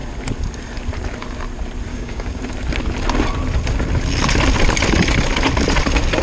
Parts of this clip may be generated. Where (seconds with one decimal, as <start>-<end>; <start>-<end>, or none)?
1.9-2.4